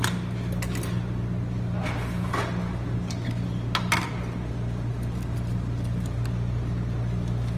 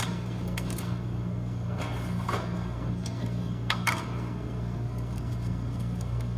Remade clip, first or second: second